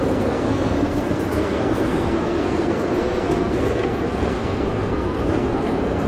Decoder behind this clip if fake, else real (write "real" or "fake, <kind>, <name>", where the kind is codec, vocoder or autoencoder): fake, codec, SNAC